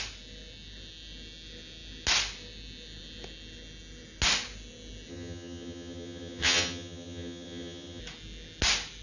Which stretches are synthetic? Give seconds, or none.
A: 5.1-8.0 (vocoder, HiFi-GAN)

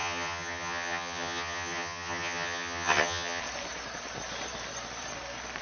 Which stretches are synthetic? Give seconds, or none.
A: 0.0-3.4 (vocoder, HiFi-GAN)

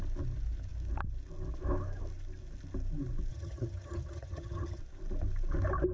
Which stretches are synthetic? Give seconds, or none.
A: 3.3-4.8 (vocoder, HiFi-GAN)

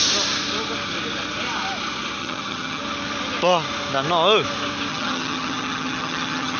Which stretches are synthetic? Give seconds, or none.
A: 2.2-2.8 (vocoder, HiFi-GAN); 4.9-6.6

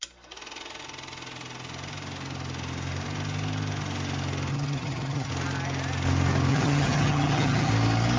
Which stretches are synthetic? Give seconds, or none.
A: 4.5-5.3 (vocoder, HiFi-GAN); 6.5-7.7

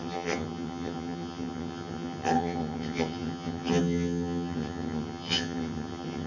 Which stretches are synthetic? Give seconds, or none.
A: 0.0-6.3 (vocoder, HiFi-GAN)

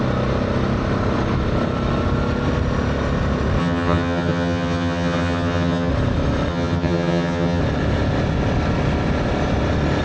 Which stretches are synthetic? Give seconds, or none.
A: 3.6-5.9 (vocoder, HiFi-GAN); 6.5-7.6

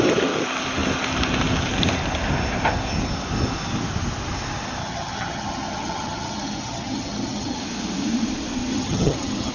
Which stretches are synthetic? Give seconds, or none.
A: 4.8-7.6 (vocoder, HiFi-GAN); 8.7-9.5